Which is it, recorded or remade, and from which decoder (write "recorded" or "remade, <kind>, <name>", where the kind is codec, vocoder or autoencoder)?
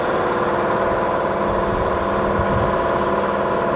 recorded